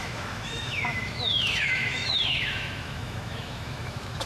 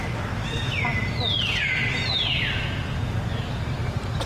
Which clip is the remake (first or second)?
first